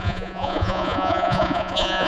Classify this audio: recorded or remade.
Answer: remade